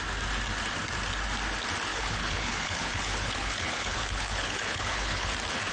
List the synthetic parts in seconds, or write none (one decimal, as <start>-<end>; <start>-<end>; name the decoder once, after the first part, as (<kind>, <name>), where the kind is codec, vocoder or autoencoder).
1.9-5.3 (codec, HILCodec)